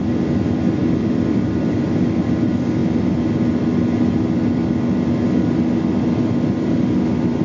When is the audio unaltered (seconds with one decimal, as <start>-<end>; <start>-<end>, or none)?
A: 0.0-7.4